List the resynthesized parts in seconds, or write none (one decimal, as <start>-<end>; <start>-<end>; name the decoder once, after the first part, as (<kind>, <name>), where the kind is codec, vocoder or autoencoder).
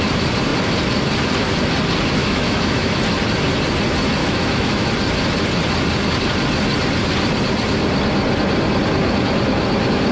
2.2-3.0 (autoencoder, DAC-VAE); 4.2-4.9